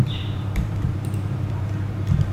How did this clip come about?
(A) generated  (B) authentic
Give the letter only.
A